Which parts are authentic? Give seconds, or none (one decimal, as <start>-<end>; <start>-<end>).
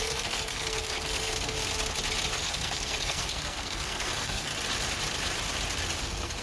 1.6-2.3; 4.5-6.0